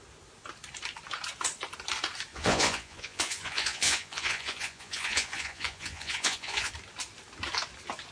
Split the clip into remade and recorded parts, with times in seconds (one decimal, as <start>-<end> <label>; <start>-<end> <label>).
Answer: 0.0-2.3 recorded; 2.3-6.7 remade; 6.7-8.1 recorded